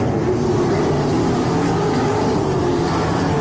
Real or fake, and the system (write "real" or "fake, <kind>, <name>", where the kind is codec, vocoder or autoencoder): real